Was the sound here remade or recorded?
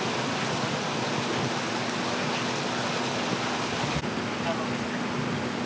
recorded